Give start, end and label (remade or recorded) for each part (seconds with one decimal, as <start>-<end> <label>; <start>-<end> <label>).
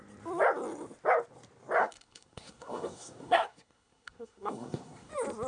0.0-1.8 recorded; 1.8-5.1 remade; 5.1-5.5 recorded